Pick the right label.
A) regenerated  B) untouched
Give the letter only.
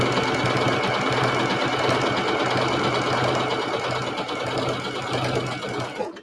B